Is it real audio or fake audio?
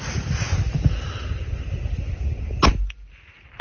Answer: real